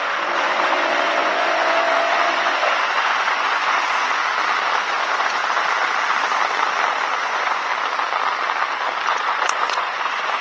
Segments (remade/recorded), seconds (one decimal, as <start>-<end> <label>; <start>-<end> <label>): 0.0-4.2 remade; 4.2-4.8 recorded; 4.8-5.4 remade; 5.4-7.2 recorded; 7.2-7.7 remade; 7.7-9.1 recorded; 9.1-10.4 remade